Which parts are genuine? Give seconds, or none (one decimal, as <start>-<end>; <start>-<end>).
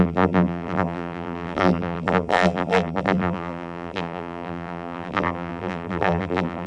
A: none